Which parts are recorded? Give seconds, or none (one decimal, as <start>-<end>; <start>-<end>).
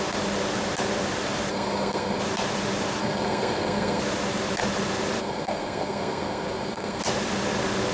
0.0-1.5; 2.2-3.0; 4.0-5.2; 7.0-7.9